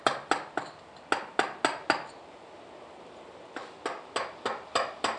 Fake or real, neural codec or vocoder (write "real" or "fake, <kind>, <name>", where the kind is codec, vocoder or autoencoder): real